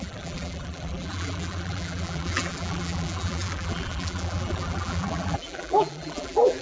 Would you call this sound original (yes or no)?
no